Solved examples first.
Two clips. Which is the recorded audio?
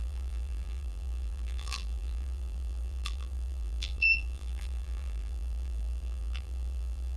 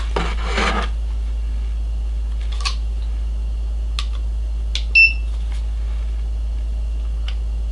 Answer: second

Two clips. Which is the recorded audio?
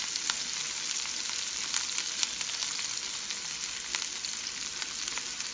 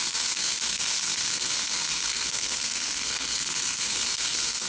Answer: first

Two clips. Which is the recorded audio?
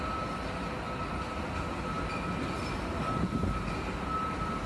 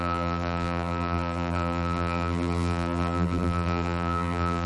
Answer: first